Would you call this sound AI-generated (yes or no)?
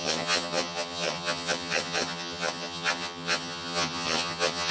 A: yes